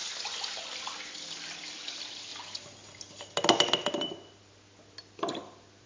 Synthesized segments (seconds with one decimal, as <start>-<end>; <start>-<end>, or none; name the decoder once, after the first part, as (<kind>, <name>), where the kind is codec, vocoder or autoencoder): none